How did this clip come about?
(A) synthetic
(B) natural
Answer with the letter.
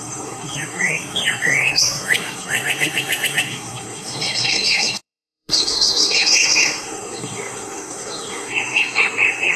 A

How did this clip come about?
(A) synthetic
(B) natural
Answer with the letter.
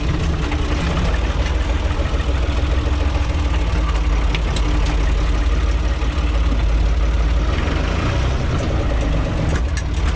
B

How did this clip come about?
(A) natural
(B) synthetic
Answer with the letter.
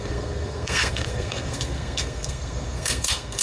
B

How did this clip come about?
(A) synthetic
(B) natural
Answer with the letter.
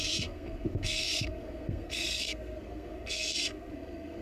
A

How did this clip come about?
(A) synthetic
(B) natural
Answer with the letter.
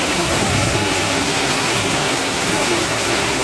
A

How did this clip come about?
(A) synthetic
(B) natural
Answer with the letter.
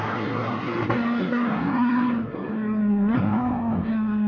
A